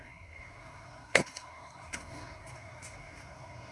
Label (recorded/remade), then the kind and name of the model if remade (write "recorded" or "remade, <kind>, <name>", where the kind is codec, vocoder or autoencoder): remade, codec, SNAC